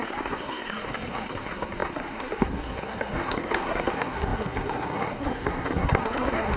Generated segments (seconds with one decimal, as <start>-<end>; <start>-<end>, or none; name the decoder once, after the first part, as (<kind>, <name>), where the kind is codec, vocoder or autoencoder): 0.0-6.6 (codec, SNAC)